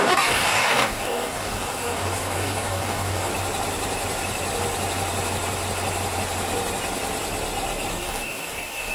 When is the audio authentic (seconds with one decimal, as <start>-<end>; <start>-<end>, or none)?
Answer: 3.3-7.9